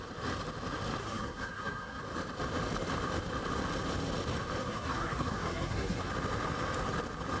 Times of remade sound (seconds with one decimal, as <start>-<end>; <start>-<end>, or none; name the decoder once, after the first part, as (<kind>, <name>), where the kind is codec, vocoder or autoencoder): 1.0-2.0 (codec, SNAC); 4.6-6.1